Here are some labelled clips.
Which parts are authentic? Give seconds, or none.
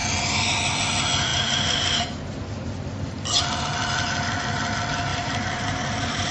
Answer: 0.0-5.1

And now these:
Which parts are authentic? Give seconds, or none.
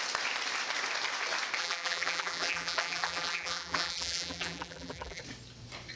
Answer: 0.0-1.6; 5.2-6.0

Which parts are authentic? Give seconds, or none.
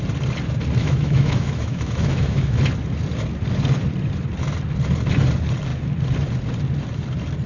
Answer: 0.0-0.8; 2.6-7.5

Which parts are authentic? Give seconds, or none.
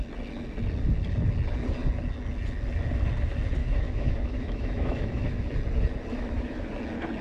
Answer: 0.0-3.6; 5.4-6.1; 6.7-7.2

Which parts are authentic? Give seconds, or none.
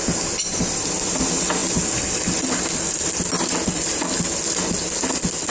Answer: 0.0-5.5